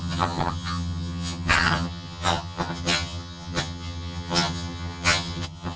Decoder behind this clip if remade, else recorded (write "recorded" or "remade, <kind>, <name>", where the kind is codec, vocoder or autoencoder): remade, vocoder, HiFi-GAN